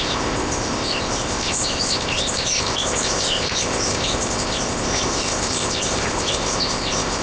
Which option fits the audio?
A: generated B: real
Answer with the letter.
A